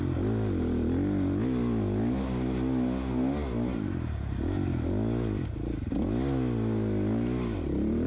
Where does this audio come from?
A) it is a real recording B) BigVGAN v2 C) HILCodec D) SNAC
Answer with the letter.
A